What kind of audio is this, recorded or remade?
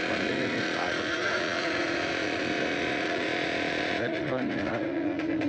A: remade